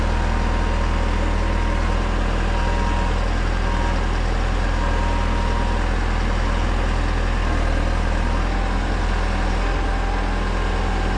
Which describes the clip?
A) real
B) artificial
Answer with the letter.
A